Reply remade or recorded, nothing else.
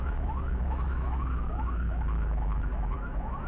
remade